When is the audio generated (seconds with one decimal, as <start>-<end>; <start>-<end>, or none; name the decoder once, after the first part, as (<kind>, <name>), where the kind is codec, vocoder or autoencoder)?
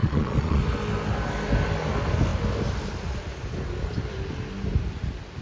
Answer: 0.0-0.6 (vocoder, Vocos)